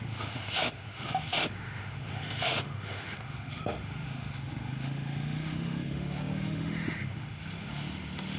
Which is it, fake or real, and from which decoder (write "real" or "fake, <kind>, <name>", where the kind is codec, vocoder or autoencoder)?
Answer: fake, autoencoder, DAC-VAE